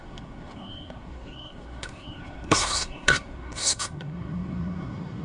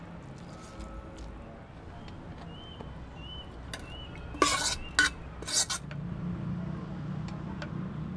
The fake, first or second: first